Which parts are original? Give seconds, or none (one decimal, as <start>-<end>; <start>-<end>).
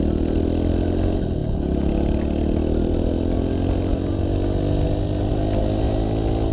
0.0-6.5